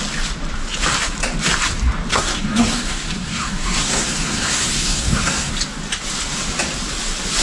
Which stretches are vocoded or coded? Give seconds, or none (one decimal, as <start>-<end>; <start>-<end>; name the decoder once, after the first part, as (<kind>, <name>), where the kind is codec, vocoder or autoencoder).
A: 2.1-5.5 (codec, SNAC)